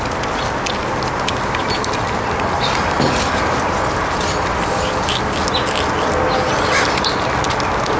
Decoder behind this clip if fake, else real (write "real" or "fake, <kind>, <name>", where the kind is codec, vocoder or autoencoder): real